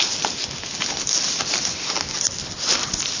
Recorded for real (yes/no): yes